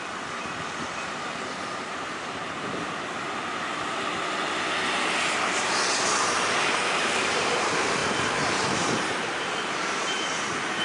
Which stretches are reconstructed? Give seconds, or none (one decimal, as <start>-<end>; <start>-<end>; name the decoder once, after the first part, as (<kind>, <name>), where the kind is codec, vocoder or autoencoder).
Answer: 0.0-2.4 (vocoder, BigVGAN v2); 7.0-10.8

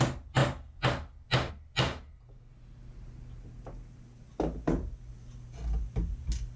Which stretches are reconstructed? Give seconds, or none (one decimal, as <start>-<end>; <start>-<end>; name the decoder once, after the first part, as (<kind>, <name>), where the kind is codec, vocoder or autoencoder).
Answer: none

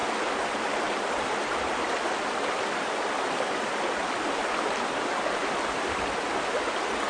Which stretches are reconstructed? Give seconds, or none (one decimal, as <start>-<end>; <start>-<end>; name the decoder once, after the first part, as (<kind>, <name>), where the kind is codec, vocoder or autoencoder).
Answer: none

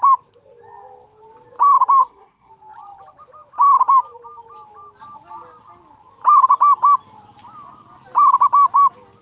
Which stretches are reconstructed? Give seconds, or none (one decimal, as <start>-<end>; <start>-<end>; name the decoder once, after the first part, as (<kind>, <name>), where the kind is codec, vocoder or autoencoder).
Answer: 2.0-2.5 (codec, SNAC)